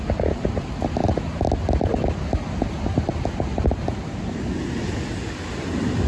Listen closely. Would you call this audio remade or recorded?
recorded